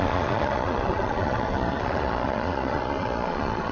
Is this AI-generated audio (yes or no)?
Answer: yes